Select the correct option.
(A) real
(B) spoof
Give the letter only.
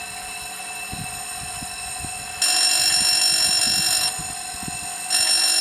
A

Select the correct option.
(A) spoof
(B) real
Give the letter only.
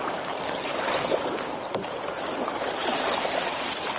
B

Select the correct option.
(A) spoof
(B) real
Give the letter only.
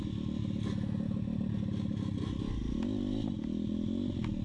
B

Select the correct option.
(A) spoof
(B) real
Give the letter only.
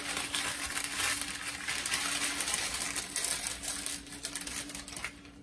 B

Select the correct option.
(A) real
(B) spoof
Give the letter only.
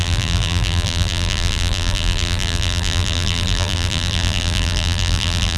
B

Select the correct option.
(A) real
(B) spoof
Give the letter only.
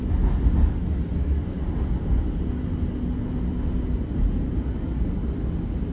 A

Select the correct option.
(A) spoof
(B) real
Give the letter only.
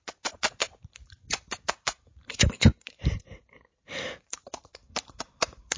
A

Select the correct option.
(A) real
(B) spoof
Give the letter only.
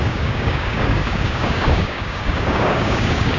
B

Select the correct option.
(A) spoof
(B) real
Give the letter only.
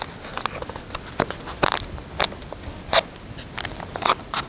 B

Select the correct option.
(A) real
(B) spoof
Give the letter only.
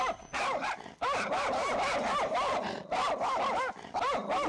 A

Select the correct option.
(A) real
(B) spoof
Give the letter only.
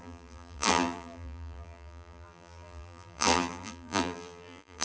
B